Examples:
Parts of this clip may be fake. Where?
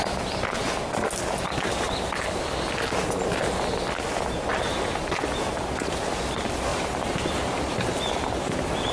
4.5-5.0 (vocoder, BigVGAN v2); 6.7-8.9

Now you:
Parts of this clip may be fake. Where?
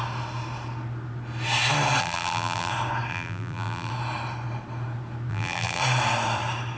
2.0-2.7 (vocoder, BigVGAN v2); 3.1-3.9; 5.3-5.8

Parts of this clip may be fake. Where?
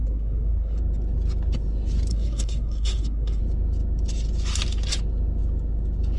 0.0-0.8 (codec, SNAC); 2.1-3.4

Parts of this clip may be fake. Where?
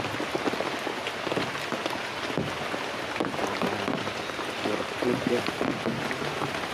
none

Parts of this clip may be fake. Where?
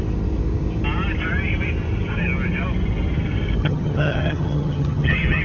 3.6-5.4 (vocoder, HiFi-GAN)